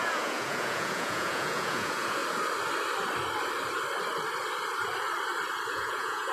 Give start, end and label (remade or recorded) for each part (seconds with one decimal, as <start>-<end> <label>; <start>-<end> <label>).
0.0-2.2 remade; 2.2-5.7 recorded; 5.7-6.3 remade